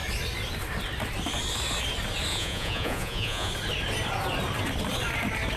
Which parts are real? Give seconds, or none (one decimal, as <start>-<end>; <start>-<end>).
0.0-2.3; 3.5-5.6